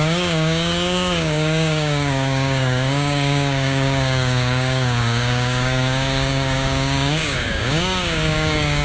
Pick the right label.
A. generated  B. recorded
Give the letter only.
A